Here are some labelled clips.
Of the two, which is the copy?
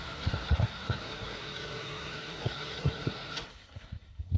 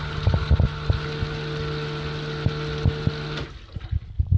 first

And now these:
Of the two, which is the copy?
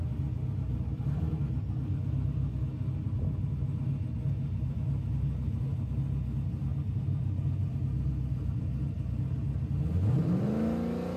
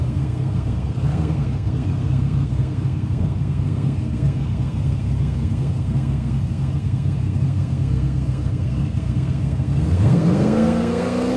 second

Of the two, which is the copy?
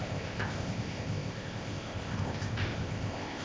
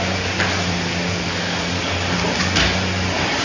first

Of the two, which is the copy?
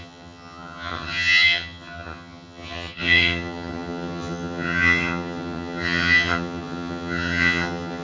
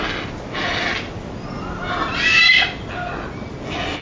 first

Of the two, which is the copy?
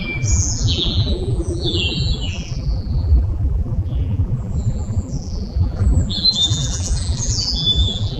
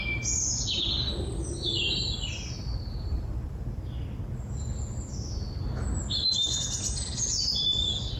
first